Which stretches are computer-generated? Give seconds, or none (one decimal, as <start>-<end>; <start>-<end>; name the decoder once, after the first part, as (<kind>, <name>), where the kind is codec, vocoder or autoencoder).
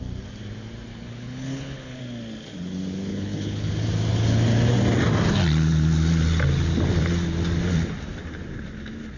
0.9-2.0 (codec, HILCodec); 3.1-3.7